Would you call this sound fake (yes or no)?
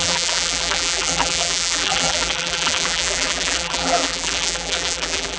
yes